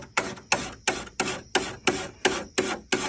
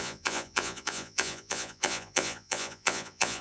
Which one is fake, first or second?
second